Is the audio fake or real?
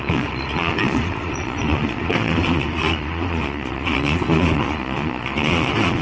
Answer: fake